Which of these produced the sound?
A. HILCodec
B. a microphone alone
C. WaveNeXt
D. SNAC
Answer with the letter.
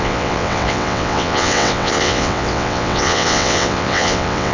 C